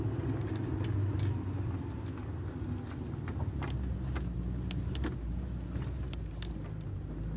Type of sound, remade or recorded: recorded